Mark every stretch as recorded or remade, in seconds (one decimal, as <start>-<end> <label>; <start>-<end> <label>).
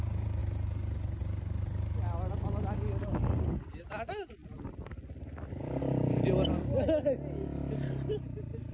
0.0-8.7 recorded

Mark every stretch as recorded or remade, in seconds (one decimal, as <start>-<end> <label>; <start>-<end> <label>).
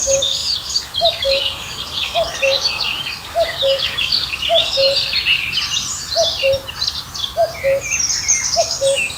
0.0-4.8 remade; 4.8-8.6 recorded; 8.6-9.2 remade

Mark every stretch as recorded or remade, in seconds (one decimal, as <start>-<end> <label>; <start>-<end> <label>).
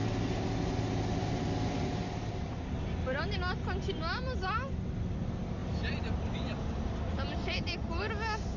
0.0-8.6 recorded